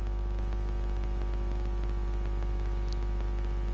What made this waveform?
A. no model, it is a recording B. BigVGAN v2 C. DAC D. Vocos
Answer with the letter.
A